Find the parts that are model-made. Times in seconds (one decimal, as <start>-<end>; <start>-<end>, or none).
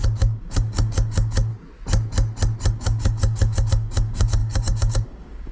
0.0-1.5; 2.7-5.5